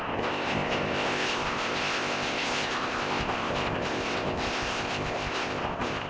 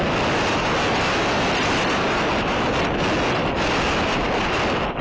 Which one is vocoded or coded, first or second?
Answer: first